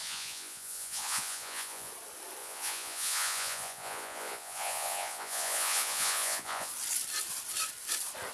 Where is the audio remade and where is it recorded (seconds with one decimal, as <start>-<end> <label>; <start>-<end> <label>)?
0.0-1.9 remade; 1.9-2.4 recorded; 2.4-6.7 remade; 6.7-8.3 recorded